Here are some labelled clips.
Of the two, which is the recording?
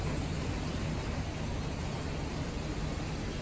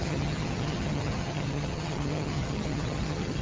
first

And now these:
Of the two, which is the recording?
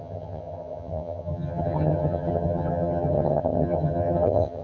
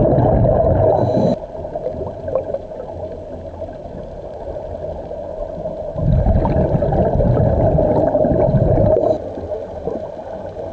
second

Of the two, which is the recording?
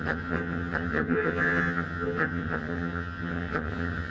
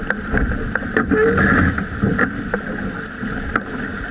second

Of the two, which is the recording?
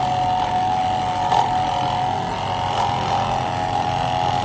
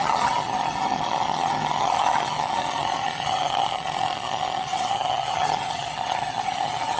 first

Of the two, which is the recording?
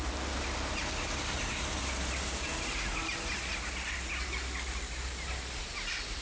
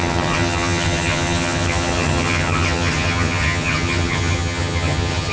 first